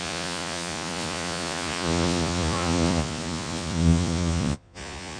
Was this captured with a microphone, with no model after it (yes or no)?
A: no